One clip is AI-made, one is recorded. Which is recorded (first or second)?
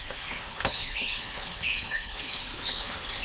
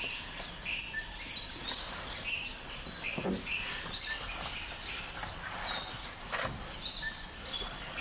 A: second